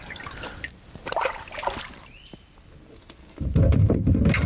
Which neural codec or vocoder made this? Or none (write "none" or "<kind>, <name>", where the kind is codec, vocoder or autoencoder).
none